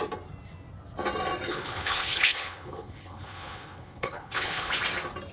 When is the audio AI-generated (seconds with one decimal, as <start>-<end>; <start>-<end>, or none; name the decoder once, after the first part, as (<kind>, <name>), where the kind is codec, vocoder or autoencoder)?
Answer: 1.5-4.7 (codec, HILCodec)